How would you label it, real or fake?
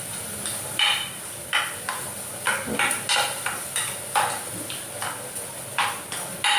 real